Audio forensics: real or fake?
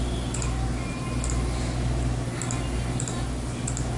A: real